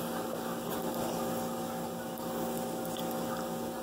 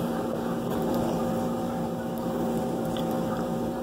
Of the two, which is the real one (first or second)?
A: first